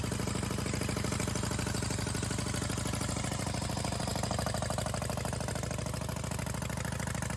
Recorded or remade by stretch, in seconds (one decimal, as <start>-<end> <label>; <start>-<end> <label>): 0.0-7.4 recorded